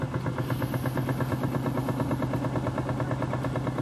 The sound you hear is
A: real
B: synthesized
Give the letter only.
A